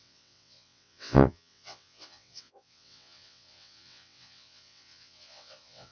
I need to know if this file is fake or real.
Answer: fake